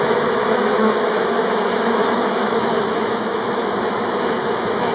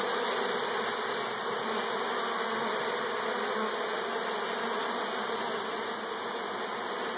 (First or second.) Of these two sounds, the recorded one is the second